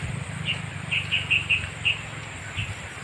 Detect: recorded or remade recorded